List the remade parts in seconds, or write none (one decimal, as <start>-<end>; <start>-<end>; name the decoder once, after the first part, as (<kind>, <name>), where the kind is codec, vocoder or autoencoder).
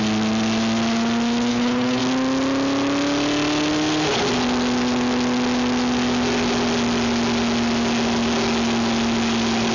1.5-2.0 (codec, HILCodec)